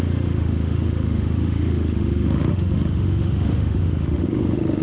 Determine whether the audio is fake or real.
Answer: fake